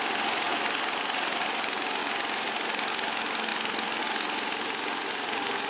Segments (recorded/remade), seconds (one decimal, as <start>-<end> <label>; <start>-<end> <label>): 0.0-5.7 recorded